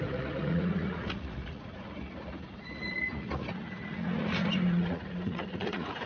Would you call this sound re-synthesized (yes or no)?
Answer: yes